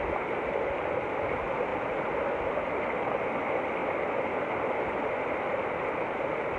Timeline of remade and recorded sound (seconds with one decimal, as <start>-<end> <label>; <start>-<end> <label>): 0.0-6.6 recorded